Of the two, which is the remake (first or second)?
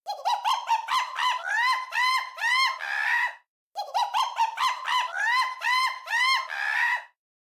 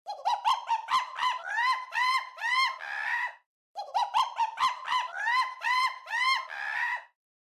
second